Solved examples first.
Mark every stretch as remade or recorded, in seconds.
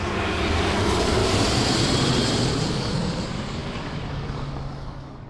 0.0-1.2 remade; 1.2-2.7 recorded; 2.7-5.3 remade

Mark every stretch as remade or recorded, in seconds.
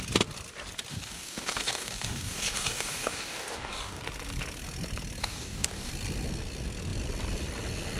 0.0-0.9 recorded; 0.9-4.0 remade; 4.0-5.2 recorded; 5.2-5.9 remade; 5.9-8.0 recorded